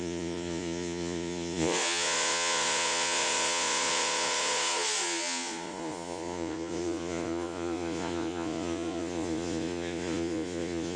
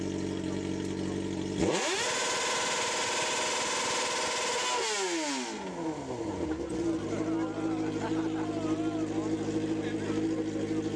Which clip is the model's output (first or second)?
first